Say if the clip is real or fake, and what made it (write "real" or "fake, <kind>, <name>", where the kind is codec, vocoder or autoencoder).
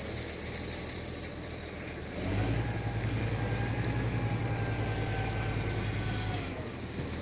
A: real